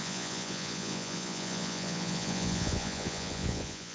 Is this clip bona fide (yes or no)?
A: no